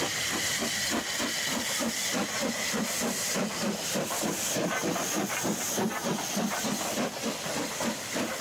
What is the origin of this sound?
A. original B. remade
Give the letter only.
A